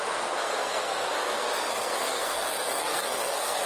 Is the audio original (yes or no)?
no